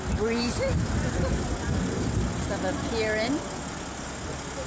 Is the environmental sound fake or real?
real